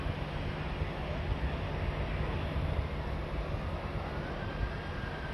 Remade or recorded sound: recorded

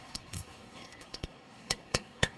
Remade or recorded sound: remade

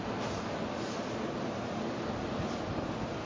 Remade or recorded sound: recorded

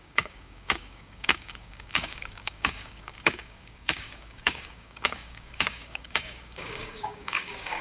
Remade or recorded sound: remade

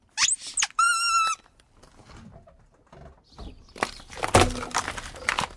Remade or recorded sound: recorded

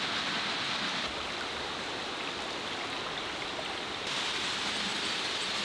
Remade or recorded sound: recorded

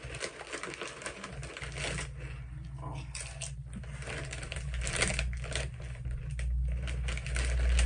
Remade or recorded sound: recorded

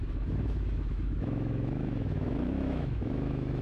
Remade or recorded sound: remade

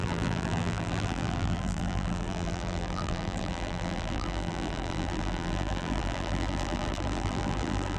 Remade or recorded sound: remade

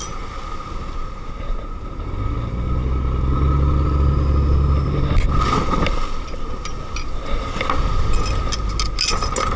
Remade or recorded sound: recorded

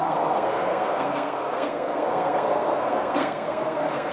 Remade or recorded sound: remade